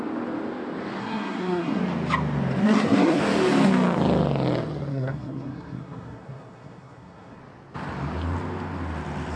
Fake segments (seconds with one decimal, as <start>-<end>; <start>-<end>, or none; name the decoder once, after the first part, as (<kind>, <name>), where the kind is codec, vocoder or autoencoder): 1.0-1.8 (codec, SNAC); 2.6-3.2; 4.9-7.4